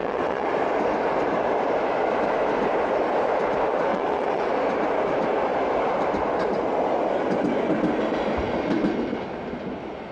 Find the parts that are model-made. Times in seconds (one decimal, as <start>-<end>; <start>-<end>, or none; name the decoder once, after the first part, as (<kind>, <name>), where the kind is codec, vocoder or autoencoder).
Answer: 0.0-0.5 (vocoder, WaveNeXt); 3.9-4.5